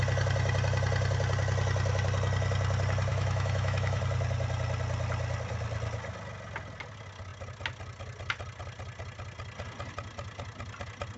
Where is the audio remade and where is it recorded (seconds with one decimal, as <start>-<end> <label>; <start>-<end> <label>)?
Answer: 0.0-3.1 recorded; 3.1-4.0 remade; 4.0-11.2 recorded